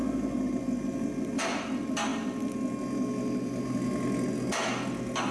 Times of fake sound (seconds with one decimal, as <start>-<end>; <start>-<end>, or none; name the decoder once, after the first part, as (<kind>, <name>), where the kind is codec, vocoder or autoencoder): none